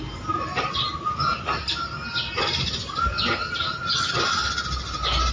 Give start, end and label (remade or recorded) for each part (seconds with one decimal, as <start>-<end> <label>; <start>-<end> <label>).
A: 0.0-5.3 recorded